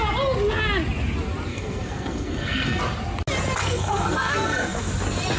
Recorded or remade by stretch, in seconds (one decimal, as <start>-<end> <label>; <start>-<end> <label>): 0.0-1.5 recorded; 1.5-2.8 remade; 2.8-3.6 recorded; 3.6-4.9 remade; 4.9-5.4 recorded

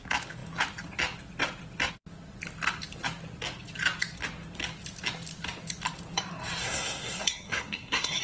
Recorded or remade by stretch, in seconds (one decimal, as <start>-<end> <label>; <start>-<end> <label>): 0.0-6.6 recorded; 6.6-8.2 remade

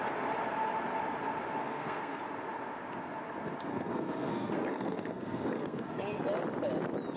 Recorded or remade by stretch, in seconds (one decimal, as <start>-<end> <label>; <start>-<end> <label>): 0.0-1.6 recorded; 1.6-2.2 remade; 2.2-3.7 recorded; 3.7-6.0 remade; 6.0-7.2 recorded

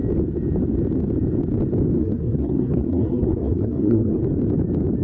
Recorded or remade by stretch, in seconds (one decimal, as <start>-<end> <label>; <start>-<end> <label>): 0.0-2.0 recorded; 2.0-4.2 remade; 4.2-5.0 recorded

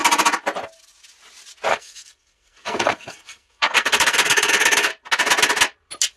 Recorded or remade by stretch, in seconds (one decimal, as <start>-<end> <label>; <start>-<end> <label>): 0.0-1.7 recorded; 1.7-4.9 remade; 4.9-6.2 recorded